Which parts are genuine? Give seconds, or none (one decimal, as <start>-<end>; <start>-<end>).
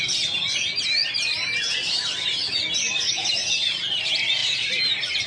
0.0-5.3